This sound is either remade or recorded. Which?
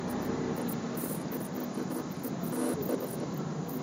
recorded